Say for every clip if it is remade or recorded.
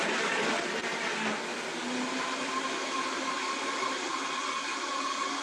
recorded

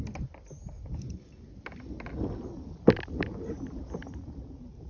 recorded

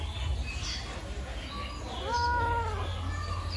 recorded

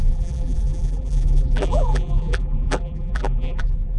remade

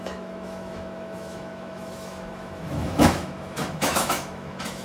remade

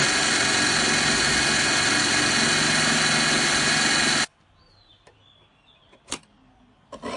recorded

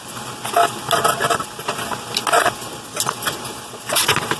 recorded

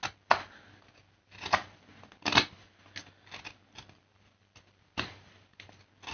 recorded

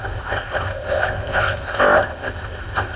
remade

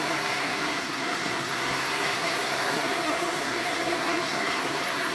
remade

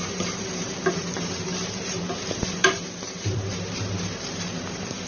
remade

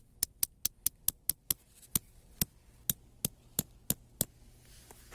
recorded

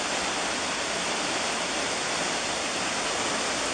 recorded